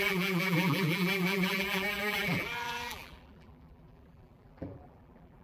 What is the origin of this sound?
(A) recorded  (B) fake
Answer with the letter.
B